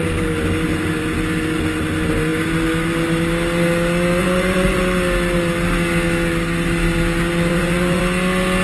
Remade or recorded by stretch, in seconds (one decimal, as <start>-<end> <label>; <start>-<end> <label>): 0.0-4.2 recorded; 4.2-4.8 remade; 4.8-7.5 recorded; 7.5-8.0 remade; 8.0-8.6 recorded